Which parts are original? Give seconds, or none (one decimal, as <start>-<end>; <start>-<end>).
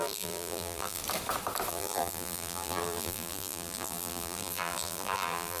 1.0-1.7